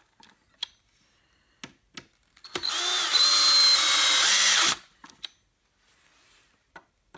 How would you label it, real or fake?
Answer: real